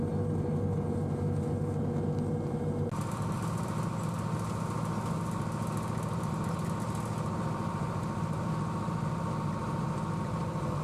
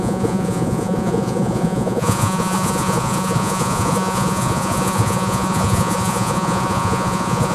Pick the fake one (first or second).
second